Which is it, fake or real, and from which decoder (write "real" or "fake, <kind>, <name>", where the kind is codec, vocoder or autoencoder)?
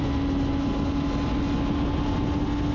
real